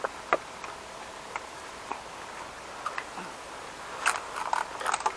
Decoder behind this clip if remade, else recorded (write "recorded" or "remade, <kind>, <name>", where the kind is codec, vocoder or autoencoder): recorded